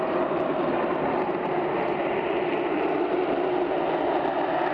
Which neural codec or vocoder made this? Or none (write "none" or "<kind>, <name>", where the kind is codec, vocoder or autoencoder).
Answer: vocoder, BigVGAN v2